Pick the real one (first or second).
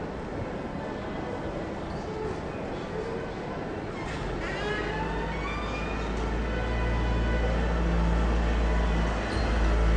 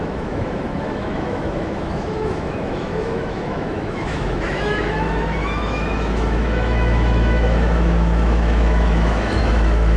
first